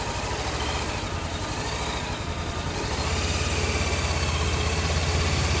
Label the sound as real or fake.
real